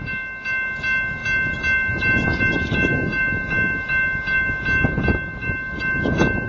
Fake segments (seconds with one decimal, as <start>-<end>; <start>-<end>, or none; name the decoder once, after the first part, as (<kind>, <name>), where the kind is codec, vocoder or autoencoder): none